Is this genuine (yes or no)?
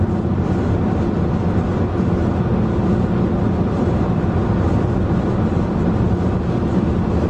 yes